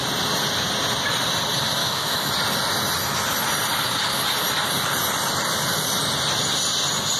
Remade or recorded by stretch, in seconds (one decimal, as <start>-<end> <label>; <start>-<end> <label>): 0.0-1.8 recorded; 1.8-2.3 remade; 2.3-7.2 recorded